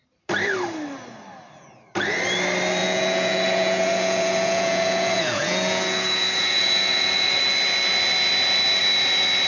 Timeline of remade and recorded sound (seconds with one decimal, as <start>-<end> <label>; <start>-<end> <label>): 0.0-2.8 recorded; 2.8-7.4 remade; 7.4-9.5 recorded

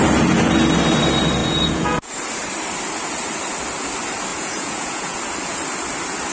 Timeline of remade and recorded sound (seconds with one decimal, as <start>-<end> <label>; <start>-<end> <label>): 0.0-1.4 recorded; 1.4-2.1 remade; 2.1-4.3 recorded; 4.3-5.2 remade; 5.2-6.3 recorded

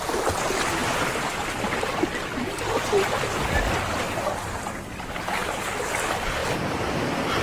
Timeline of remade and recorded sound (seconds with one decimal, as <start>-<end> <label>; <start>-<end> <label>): 0.0-7.4 recorded